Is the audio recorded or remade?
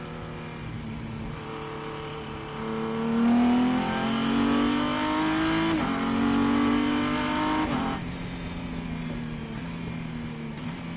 recorded